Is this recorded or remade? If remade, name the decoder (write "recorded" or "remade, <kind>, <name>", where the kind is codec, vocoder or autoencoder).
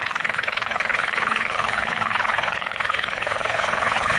remade, codec, HILCodec